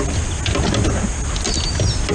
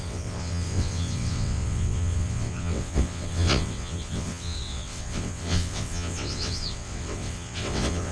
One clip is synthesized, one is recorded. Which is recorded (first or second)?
first